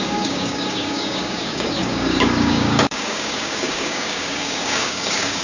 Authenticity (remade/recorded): remade